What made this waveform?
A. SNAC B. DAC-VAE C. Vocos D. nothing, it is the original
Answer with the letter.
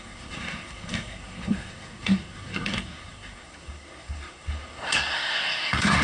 A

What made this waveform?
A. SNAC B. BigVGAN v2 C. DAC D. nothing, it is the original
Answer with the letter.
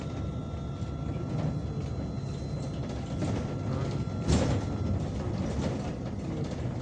D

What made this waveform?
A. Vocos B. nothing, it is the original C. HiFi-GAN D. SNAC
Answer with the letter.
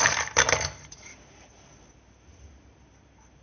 B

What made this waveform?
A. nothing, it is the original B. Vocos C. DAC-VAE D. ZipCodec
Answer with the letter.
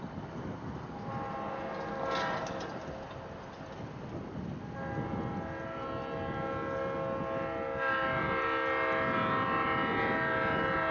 A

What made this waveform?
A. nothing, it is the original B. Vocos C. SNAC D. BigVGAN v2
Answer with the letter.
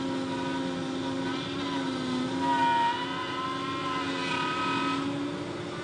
A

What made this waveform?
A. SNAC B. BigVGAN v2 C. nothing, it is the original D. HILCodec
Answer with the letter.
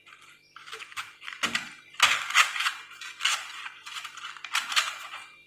C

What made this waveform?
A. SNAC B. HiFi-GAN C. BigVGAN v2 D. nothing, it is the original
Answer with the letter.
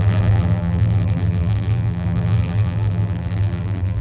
C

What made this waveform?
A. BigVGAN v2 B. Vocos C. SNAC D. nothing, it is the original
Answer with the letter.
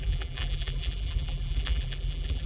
A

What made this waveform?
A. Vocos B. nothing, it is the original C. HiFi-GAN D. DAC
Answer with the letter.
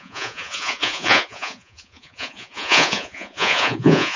A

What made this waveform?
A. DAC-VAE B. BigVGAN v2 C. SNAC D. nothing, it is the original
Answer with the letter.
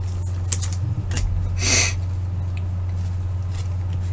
D